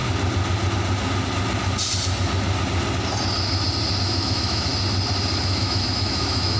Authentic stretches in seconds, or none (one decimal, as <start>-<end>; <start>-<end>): 0.0-4.0; 4.7-5.4